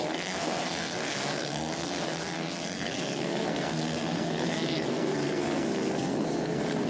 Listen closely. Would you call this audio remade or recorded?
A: remade